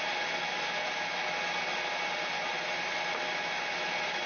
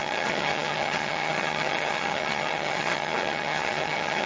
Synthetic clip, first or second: second